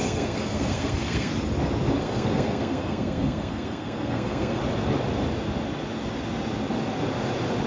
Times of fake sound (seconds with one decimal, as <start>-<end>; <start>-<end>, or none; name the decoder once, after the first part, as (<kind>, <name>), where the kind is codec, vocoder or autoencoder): 0.0-1.3 (codec, SNAC); 2.0-4.6